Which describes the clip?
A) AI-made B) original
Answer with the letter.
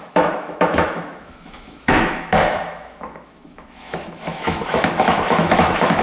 A